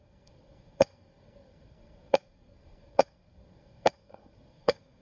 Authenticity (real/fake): fake